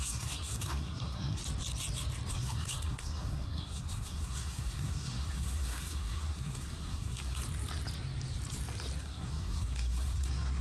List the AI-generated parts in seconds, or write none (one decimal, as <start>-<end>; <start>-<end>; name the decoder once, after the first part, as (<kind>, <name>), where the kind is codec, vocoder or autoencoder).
0.0-1.4 (codec, SNAC); 2.3-7.4; 9.0-10.6